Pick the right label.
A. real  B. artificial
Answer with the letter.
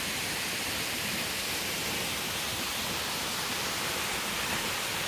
A